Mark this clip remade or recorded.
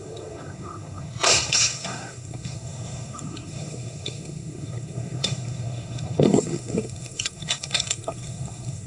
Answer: remade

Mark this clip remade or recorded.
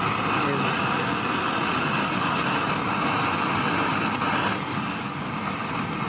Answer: recorded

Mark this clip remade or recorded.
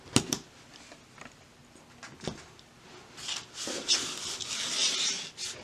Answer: recorded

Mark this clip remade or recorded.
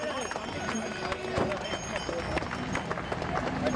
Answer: recorded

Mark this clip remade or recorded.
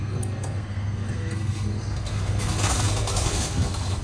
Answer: remade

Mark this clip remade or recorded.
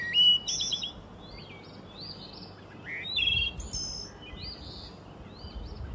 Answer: recorded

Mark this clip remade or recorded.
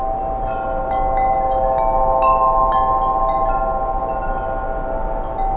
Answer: recorded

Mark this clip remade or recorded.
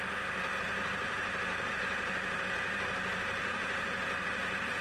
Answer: recorded